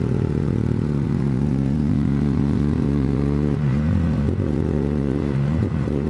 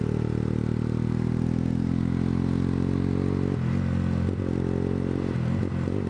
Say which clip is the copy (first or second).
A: first